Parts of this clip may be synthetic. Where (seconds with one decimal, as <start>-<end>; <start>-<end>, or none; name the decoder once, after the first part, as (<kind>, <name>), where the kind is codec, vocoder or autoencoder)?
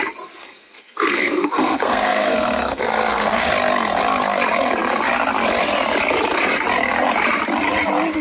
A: 0.4-3.5 (codec, SNAC)